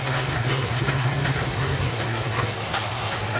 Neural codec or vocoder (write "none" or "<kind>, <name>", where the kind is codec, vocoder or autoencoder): codec, SNAC